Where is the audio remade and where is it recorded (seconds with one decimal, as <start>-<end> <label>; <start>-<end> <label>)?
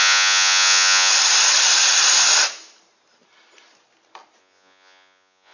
0.0-1.1 remade; 1.1-4.4 recorded; 4.4-5.5 remade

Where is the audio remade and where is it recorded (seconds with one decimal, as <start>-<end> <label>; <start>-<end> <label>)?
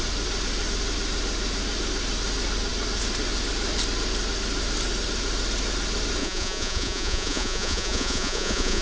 0.0-6.2 recorded; 6.2-8.8 remade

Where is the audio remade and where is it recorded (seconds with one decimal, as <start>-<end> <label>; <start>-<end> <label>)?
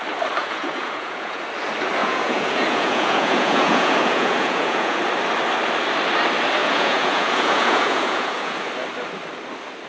0.0-0.4 recorded; 0.4-1.4 remade; 1.4-2.0 recorded; 2.0-5.0 remade; 5.0-6.6 recorded; 6.6-8.7 remade; 8.7-9.9 recorded